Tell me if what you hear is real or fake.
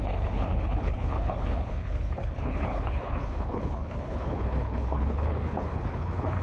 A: fake